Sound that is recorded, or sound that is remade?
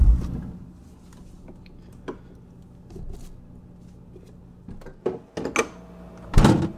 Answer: recorded